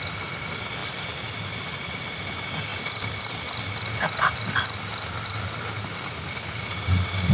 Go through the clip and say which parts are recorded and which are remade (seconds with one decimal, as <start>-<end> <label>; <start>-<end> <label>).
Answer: 0.0-7.3 recorded